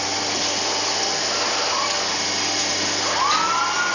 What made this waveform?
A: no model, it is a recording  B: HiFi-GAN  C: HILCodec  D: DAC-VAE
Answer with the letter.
A